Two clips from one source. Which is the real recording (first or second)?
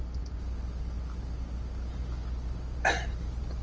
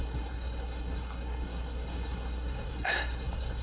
first